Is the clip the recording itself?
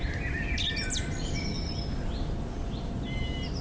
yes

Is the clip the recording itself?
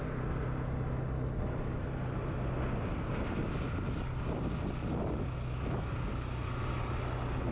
yes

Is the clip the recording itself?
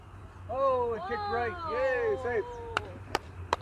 no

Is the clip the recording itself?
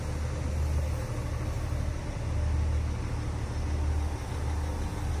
yes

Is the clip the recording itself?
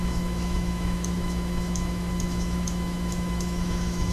no